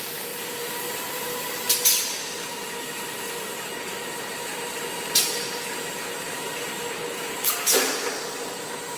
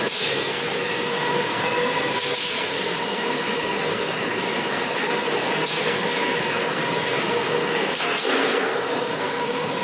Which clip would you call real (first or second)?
first